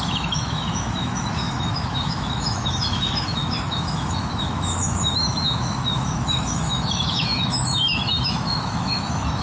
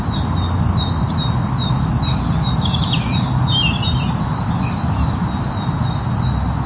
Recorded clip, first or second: second